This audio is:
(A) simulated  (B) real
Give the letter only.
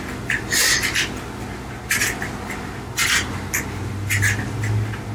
B